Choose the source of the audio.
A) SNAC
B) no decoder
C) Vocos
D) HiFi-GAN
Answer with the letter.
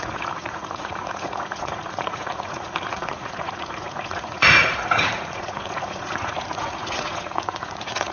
C